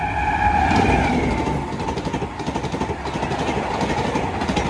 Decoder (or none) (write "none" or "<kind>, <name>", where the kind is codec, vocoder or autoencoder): none